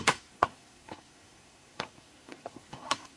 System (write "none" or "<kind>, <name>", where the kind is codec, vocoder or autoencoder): codec, SNAC